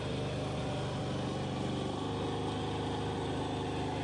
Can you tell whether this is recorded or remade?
recorded